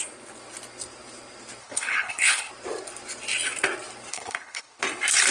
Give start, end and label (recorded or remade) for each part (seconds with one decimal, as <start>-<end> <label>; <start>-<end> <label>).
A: 0.0-1.6 recorded; 1.6-2.5 remade; 2.5-4.1 recorded; 4.1-4.8 remade; 4.8-5.3 recorded